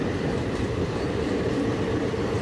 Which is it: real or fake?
fake